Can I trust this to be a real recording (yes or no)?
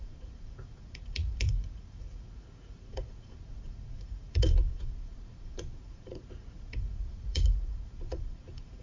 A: no